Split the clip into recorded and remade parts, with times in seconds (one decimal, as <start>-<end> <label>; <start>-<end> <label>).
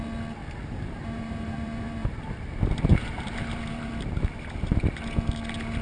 0.0-0.4 recorded; 0.4-3.9 remade; 3.9-5.8 recorded